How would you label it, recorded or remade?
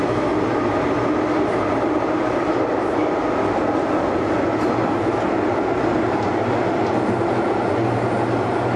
recorded